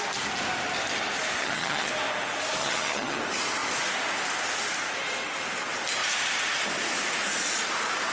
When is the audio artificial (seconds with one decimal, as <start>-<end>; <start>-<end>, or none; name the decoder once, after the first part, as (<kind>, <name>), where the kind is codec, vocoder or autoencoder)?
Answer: 1.4-1.9 (vocoder, HiFi-GAN); 2.6-3.2

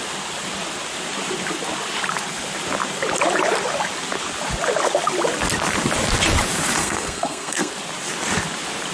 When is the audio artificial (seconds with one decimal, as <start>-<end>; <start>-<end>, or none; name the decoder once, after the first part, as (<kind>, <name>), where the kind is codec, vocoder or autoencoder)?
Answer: 6.8-7.7 (codec, SNAC)

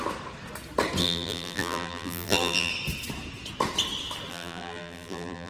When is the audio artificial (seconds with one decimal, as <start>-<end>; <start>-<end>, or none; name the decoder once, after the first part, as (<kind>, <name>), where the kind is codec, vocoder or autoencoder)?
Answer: 1.0-2.7 (vocoder, BigVGAN v2); 4.3-5.5

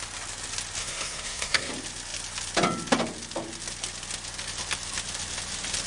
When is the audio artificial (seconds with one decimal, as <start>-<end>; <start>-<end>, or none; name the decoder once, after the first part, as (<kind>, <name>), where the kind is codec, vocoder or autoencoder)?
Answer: 0.8-1.7 (codec, SNAC)